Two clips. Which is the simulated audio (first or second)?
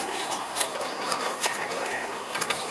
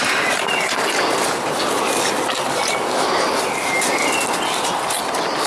first